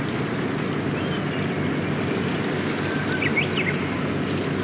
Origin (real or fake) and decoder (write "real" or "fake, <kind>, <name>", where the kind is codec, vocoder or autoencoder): real